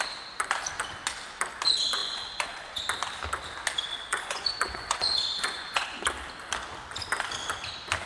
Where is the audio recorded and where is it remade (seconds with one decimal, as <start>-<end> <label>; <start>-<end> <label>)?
0.0-2.0 recorded; 2.0-2.8 remade; 2.8-4.1 recorded; 4.1-6.0 remade; 6.0-8.1 recorded